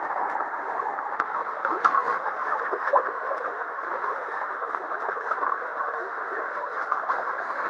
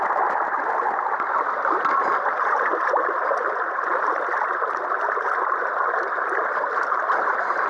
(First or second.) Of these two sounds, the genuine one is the second